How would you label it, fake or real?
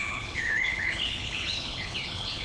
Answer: fake